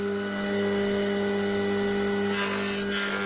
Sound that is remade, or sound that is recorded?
recorded